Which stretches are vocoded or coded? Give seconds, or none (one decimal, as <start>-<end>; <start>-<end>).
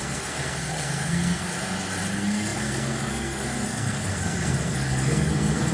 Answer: 0.0-1.5; 2.1-5.7